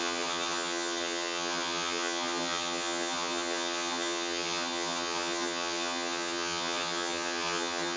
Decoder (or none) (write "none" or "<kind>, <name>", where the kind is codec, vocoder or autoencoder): vocoder, HiFi-GAN